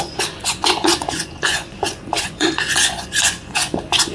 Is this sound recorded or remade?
remade